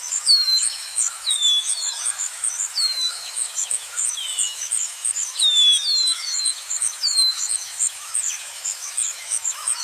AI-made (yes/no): yes